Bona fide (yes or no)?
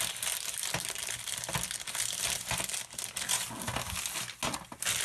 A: yes